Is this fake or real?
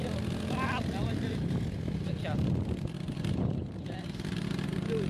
real